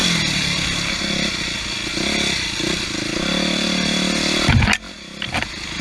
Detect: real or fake real